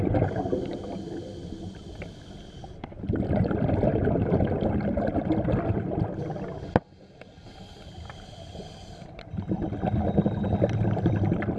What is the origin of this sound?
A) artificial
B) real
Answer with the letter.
B